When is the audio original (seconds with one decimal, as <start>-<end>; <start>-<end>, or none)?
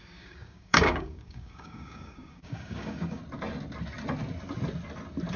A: 3.2-5.4